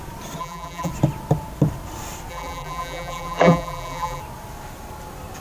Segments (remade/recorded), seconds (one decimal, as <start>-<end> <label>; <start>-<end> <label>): 0.0-0.4 recorded; 0.4-0.9 remade; 0.9-2.3 recorded; 2.3-4.2 remade; 4.2-5.4 recorded